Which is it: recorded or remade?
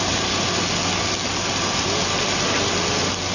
recorded